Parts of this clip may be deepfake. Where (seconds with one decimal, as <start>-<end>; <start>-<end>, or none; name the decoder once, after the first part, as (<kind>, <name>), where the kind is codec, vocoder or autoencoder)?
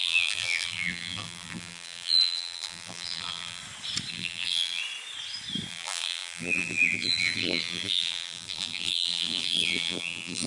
0.0-3.6 (vocoder, BigVGAN v2); 4.1-4.8; 5.7-10.5